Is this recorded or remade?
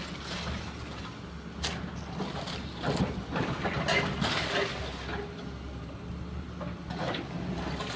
recorded